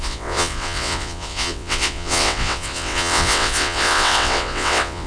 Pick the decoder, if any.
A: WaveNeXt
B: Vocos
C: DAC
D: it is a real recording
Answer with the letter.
A